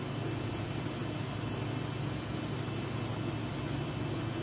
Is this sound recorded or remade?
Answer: recorded